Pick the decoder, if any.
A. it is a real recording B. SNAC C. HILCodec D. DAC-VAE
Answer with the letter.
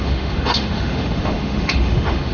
D